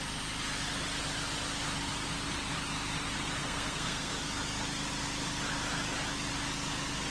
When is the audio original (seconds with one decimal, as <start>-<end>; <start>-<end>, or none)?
0.0-3.4; 4.1-7.1